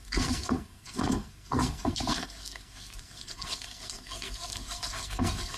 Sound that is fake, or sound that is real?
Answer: fake